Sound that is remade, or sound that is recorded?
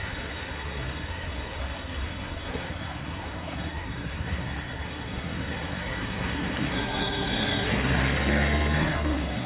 remade